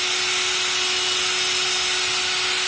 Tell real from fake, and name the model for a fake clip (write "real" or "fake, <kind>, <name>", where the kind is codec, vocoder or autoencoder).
real